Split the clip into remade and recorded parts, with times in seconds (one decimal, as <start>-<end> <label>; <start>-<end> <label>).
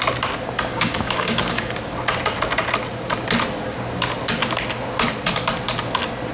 0.0-0.7 recorded; 0.7-1.8 remade; 1.8-6.3 recorded